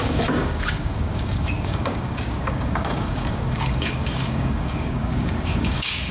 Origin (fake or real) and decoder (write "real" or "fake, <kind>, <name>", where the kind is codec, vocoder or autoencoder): fake, codec, DAC